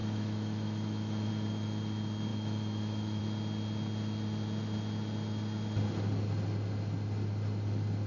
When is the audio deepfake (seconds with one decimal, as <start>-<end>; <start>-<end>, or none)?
0.0-1.3; 2.3-3.2